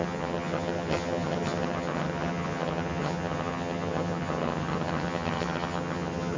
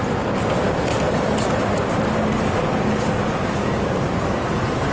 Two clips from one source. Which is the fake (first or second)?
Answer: first